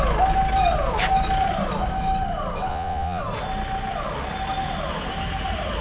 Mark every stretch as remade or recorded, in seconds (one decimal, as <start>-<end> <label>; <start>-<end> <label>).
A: 0.0-2.7 recorded; 2.7-3.2 remade; 3.2-5.8 recorded